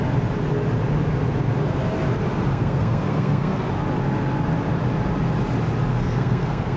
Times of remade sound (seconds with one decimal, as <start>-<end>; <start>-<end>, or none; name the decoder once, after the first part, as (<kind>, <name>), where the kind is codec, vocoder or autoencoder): 2.5-3.7 (codec, SNAC); 5.9-6.8